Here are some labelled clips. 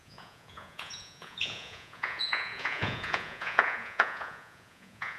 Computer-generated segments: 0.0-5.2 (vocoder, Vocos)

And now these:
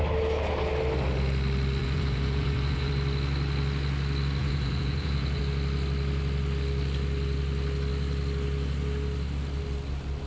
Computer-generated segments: 1.8-2.9 (vocoder, Vocos); 4.4-5.4

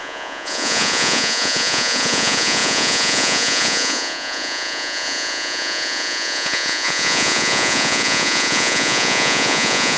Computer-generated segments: 0.0-10.0 (vocoder, Vocos)